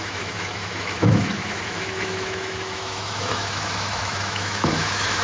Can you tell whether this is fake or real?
fake